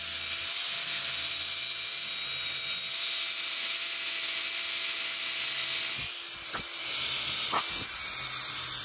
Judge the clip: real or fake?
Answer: real